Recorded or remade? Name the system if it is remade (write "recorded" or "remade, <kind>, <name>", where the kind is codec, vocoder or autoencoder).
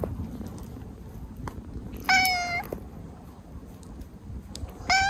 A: recorded